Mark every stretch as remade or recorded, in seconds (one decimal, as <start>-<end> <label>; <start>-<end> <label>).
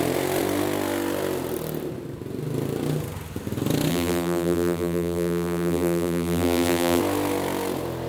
0.0-3.9 recorded; 3.9-7.0 remade; 7.0-8.1 recorded